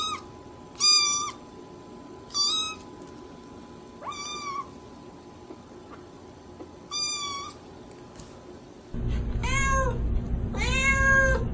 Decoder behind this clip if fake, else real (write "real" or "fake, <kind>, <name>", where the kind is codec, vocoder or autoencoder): real